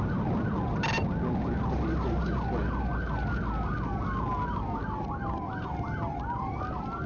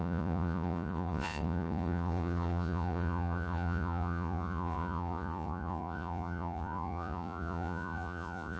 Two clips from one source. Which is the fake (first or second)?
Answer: second